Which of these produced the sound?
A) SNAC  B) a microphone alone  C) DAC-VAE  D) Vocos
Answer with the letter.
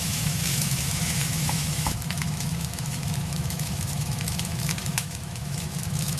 C